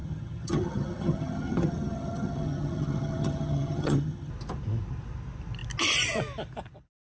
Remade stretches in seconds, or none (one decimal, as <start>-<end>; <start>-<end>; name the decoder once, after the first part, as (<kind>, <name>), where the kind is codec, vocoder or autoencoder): 0.0-4.3 (vocoder, HiFi-GAN)